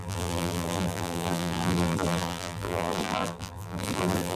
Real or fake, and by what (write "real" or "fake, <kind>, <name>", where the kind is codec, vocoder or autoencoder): fake, vocoder, BigVGAN v2